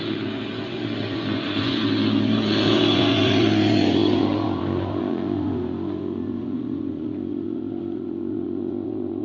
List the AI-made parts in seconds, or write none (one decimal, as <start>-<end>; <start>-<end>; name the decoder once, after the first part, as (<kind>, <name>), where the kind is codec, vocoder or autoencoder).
0.0-9.2 (vocoder, Vocos)